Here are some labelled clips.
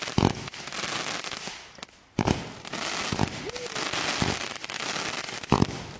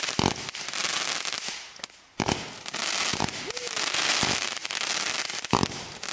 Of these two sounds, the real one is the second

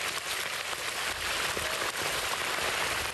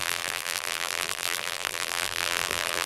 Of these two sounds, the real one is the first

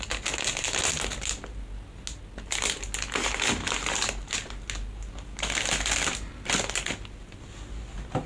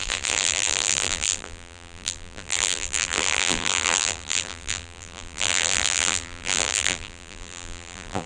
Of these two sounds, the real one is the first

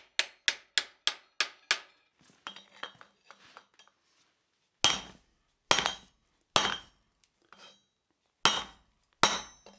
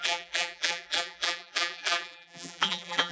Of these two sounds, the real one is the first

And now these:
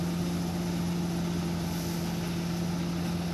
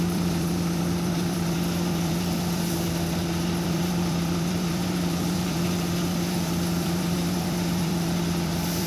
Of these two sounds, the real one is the first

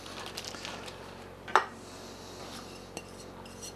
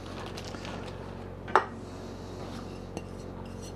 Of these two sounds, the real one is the second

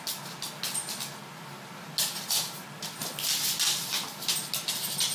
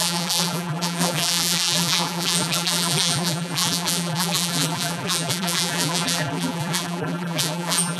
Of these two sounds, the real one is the first